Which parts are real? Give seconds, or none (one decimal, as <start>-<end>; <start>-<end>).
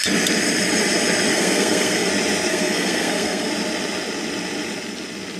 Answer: 0.0-1.3; 2.1-2.5; 3.5-5.4